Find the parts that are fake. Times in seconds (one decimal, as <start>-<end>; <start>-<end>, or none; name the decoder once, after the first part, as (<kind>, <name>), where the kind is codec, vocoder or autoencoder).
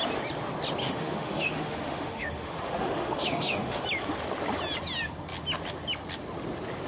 0.8-3.8 (autoencoder, DAC-VAE)